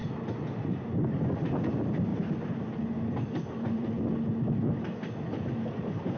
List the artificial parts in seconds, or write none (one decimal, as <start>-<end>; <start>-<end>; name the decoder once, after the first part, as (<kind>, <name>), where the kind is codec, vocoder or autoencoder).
none